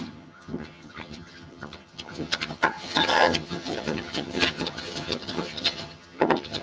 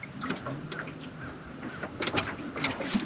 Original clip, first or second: second